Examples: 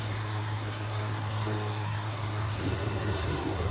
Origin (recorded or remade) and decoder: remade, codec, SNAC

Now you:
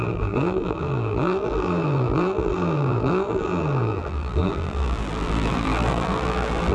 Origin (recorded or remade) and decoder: remade, vocoder, BigVGAN v2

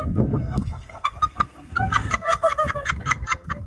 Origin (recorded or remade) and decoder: remade, codec, SNAC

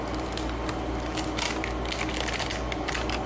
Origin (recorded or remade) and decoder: recorded